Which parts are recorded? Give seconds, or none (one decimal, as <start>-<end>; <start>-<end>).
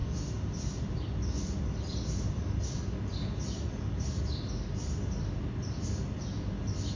0.0-7.0